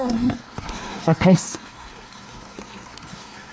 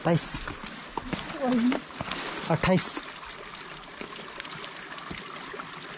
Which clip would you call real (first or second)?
second